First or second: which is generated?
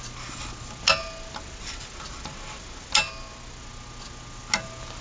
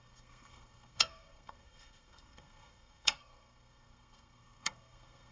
second